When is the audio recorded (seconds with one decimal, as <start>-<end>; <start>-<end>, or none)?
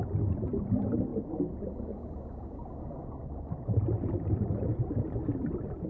0.0-5.9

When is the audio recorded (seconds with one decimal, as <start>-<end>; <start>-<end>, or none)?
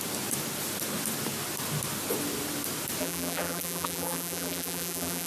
0.0-3.0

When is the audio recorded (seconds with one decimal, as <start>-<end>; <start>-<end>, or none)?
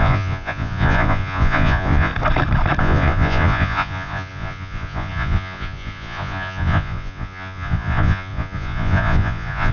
2.1-2.8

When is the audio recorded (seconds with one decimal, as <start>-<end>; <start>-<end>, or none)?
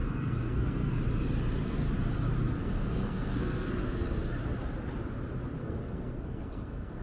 1.0-2.6; 4.2-5.6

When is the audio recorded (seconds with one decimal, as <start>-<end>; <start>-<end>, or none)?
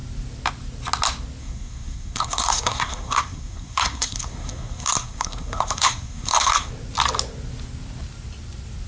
0.0-1.4; 6.7-8.9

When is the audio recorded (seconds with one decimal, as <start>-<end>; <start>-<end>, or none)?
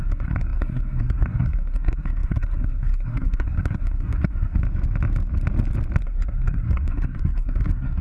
4.6-6.0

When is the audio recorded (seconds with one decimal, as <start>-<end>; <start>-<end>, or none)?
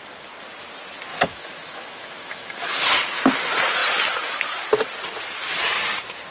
0.0-1.1; 2.7-6.3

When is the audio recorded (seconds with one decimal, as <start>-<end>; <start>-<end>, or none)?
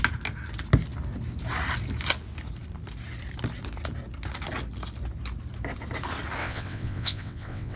0.0-6.4